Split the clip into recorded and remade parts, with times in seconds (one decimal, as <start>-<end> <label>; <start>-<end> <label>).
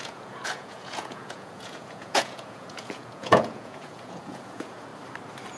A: 0.0-4.9 remade; 4.9-5.6 recorded